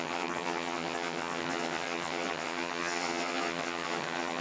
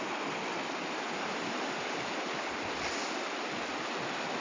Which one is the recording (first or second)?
second